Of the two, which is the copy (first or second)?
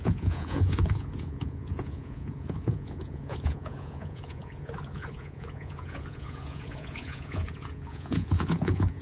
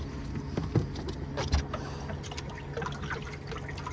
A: first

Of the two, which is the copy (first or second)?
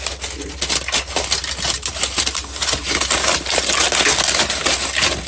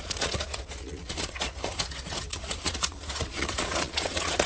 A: second